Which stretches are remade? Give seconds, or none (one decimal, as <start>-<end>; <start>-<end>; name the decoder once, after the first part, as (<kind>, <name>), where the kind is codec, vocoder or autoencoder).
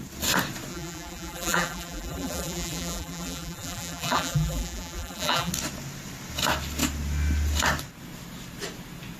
0.7-5.5 (vocoder, BigVGAN v2)